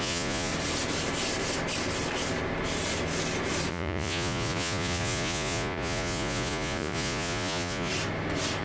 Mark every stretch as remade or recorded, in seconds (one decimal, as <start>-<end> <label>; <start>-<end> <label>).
0.0-0.5 remade; 0.5-3.7 recorded; 3.7-7.9 remade; 7.9-8.6 recorded